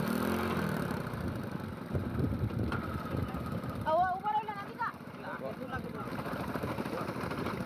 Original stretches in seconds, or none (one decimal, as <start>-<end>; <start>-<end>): 0.0-7.7